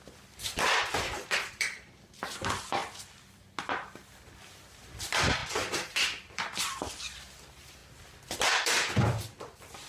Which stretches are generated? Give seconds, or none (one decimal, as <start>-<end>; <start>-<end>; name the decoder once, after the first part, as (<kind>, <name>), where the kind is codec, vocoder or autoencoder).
0.0-2.8 (vocoder, BigVGAN v2); 4.3-7.8; 8.5-9.9